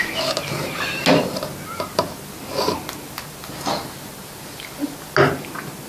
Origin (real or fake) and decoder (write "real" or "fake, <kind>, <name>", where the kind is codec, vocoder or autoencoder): real